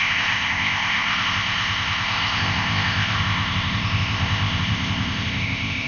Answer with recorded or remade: remade